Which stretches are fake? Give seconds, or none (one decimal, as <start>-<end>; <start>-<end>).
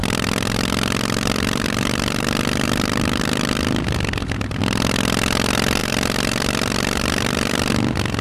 0.0-4.6; 5.8-7.7